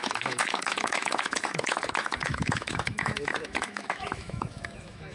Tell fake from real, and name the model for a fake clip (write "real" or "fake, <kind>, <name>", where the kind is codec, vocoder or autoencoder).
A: fake, autoencoder, DAC-VAE